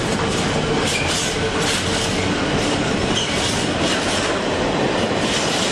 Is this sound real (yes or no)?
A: yes